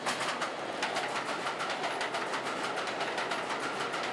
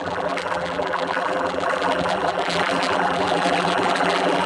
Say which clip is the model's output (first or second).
second